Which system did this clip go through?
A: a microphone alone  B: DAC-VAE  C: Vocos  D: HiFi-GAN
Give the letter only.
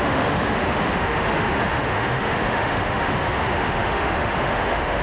B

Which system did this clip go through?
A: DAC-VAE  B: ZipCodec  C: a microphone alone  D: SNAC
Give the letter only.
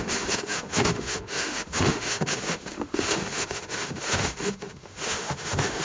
A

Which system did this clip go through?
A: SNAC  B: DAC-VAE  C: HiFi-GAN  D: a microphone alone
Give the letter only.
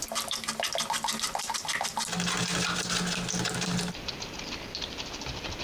D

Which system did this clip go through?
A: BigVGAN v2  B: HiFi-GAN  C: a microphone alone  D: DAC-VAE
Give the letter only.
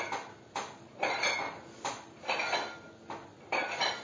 C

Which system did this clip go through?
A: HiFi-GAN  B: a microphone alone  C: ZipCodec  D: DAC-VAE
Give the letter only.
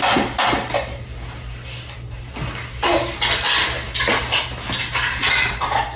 B